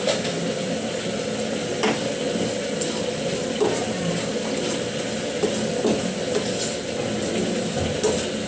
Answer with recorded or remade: recorded